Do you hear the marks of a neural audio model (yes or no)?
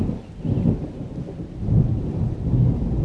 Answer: no